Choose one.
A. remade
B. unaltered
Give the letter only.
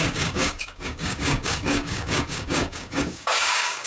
A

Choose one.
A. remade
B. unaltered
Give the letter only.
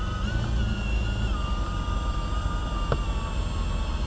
B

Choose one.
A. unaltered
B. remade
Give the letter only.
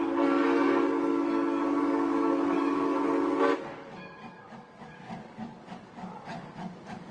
B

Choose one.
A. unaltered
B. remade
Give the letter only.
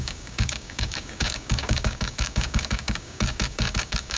B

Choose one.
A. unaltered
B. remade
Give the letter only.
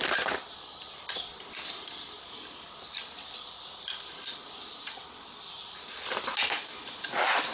A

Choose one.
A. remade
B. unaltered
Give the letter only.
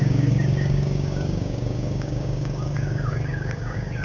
A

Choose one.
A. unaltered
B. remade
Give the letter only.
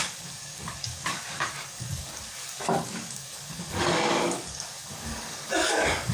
B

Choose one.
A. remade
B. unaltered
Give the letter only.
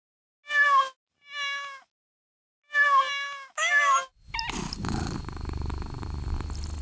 B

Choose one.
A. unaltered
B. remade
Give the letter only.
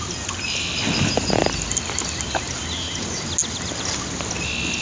A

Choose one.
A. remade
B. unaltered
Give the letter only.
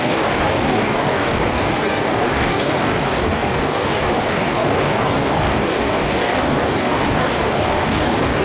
A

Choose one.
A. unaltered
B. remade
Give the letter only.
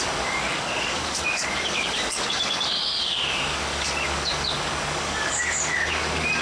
B